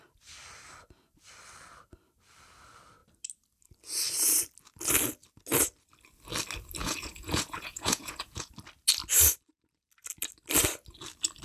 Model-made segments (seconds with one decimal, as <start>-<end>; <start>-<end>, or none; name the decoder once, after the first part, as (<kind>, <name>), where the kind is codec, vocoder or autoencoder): 6.8-8.5 (vocoder, Vocos)